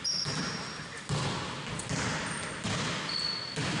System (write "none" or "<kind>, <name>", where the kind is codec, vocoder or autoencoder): none